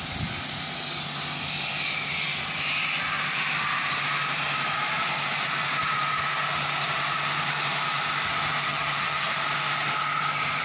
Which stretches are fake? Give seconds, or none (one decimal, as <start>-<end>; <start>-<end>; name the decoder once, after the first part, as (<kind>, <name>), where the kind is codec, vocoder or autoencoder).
8.7-9.3 (vocoder, HiFi-GAN)